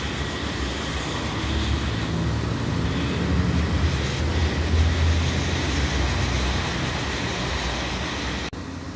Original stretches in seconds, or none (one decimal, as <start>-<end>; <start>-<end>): 0.0-9.0